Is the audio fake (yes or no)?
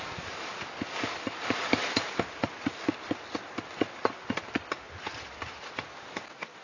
no